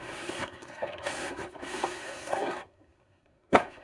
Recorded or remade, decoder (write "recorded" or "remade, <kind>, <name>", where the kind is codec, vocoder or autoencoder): remade, codec, SNAC